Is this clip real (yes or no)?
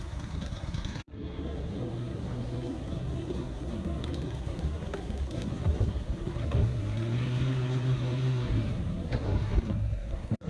no